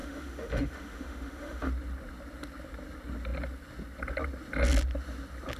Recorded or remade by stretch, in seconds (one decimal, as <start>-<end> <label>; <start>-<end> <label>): 0.0-1.7 remade; 1.7-5.6 recorded